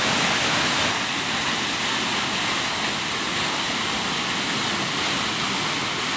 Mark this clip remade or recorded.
recorded